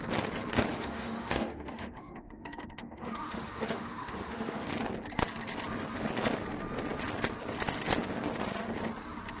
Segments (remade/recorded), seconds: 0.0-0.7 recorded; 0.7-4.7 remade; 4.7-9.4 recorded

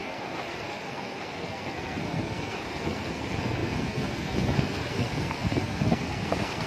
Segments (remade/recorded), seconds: 0.0-6.7 remade

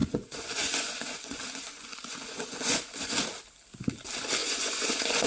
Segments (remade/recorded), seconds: 0.0-3.2 remade; 3.2-4.4 recorded; 4.4-5.3 remade

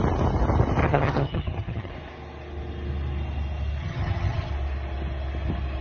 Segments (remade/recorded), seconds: 0.0-0.8 recorded; 0.8-1.9 remade; 1.9-3.8 recorded; 3.8-4.5 remade; 4.5-5.8 recorded

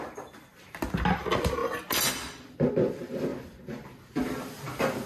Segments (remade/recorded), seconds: 0.0-5.1 recorded

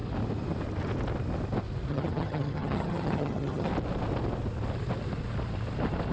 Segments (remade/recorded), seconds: 0.0-1.9 recorded; 1.9-3.7 remade; 3.7-6.1 recorded